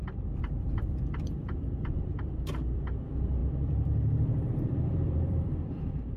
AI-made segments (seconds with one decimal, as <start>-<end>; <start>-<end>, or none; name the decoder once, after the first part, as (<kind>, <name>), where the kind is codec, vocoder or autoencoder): 0.0-1.4 (vocoder, BigVGAN v2); 2.2-6.2